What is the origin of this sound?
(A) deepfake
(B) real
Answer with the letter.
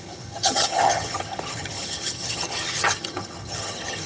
A